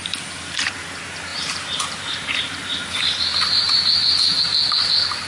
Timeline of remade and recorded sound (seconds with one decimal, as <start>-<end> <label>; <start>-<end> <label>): 0.0-1.3 recorded; 1.3-4.4 remade; 4.4-5.3 recorded